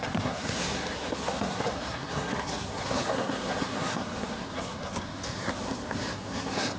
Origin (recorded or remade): remade